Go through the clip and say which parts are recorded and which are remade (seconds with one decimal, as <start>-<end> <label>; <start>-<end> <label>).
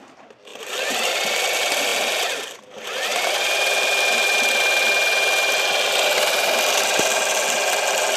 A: 0.0-0.5 recorded; 0.5-1.1 remade; 1.1-3.1 recorded; 3.1-4.9 remade; 4.9-8.2 recorded